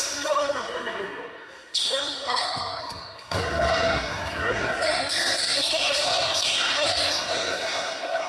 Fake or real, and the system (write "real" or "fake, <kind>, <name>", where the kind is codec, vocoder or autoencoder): fake, codec, SNAC